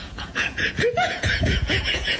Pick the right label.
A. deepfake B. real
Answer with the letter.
A